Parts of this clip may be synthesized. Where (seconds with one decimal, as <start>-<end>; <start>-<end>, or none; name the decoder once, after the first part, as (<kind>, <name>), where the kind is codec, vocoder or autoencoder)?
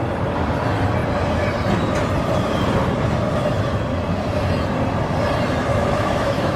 5.7-6.6 (autoencoder, DAC-VAE)